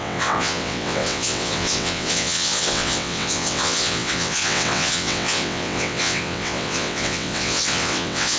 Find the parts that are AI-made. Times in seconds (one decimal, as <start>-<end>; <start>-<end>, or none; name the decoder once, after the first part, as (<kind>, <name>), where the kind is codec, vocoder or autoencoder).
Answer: 0.0-8.4 (vocoder, WaveNeXt)